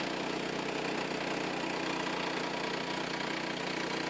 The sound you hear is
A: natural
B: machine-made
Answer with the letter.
A